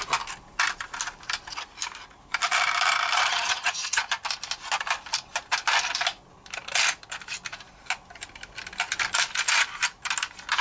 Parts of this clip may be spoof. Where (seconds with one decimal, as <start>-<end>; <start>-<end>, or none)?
3.3-4.0